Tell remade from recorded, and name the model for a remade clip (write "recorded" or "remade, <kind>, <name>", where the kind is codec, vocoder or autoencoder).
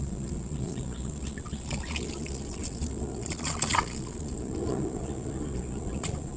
remade, vocoder, Vocos